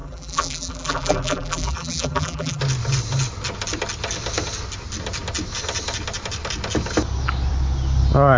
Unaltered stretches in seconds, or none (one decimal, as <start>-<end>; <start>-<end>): 2.6-8.4